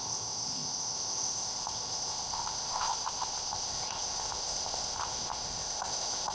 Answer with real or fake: fake